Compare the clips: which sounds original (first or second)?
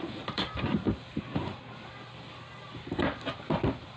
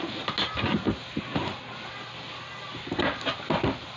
second